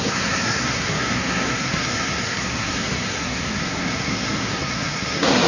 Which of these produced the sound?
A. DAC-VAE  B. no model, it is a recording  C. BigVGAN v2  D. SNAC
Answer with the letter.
D